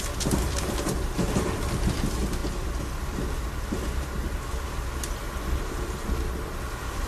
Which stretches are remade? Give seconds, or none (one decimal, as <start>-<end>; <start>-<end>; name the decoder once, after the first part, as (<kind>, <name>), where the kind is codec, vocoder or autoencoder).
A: none